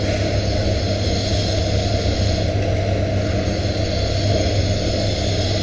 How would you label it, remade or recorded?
recorded